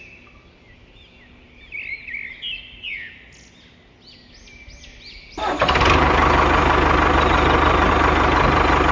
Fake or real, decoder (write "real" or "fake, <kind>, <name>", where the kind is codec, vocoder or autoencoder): real